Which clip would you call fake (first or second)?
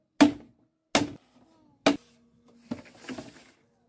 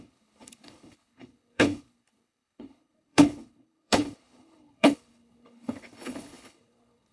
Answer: second